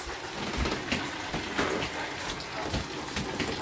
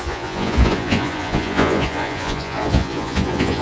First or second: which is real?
first